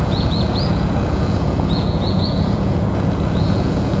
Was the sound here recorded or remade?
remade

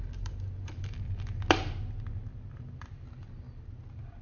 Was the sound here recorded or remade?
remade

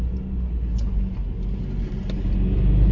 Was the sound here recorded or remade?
recorded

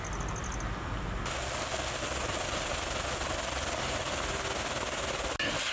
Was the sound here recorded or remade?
recorded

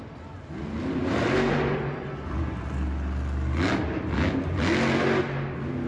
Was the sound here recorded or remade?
recorded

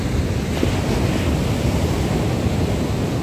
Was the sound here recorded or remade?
recorded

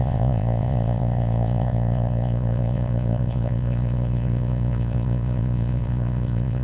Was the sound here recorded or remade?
remade